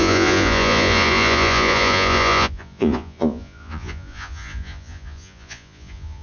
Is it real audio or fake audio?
fake